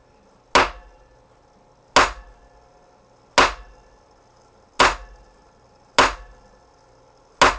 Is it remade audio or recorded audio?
recorded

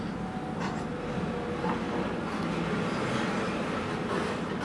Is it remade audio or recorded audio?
recorded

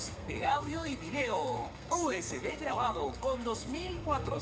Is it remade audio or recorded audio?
remade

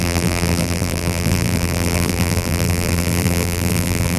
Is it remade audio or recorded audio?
remade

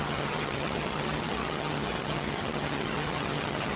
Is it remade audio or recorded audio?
remade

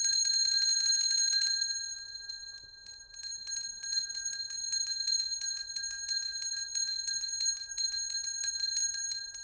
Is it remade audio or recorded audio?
remade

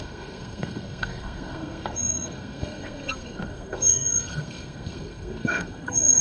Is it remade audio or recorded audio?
remade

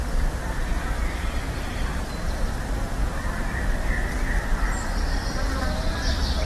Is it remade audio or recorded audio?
remade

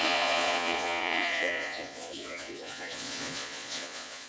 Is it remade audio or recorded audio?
remade